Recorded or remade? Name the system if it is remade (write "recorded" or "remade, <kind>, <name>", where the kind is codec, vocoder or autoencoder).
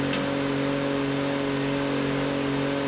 recorded